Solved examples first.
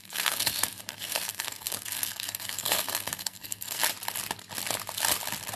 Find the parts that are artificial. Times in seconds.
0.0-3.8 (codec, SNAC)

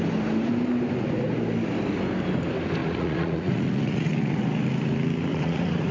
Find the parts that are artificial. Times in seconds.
2.8-4.4 (vocoder, Vocos); 5.3-5.9

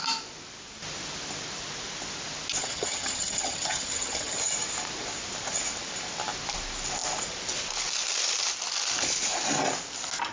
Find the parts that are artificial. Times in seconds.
2.6-4.4 (vocoder, HiFi-GAN)

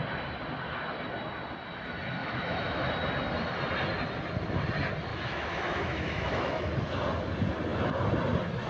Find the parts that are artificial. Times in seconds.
2.2-2.9 (autoencoder, DAC-VAE); 5.1-6.7